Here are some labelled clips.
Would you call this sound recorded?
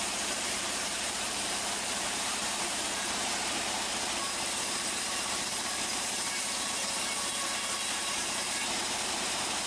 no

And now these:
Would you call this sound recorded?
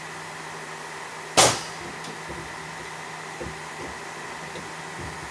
yes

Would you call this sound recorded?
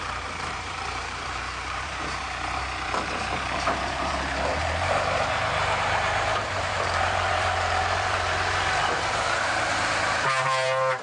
no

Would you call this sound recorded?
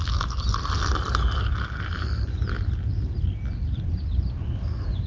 yes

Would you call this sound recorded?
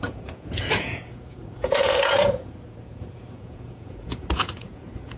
no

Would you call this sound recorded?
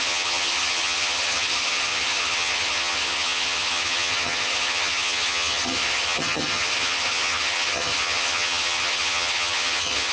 no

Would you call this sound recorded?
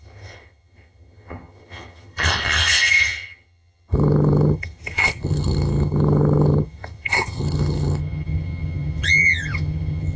no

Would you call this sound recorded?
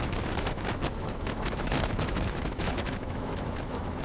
no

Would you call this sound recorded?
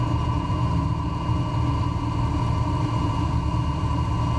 yes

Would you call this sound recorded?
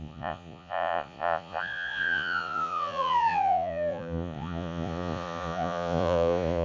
no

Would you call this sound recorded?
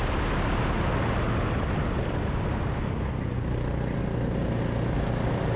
yes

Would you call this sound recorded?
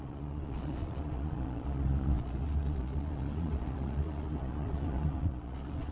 no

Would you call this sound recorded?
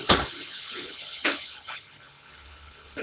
no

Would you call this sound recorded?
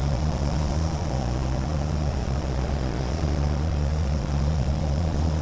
no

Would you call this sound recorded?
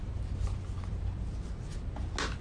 yes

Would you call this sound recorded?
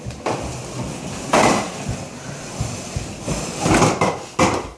yes